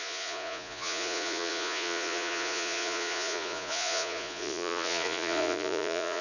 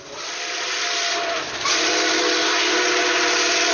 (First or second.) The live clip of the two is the second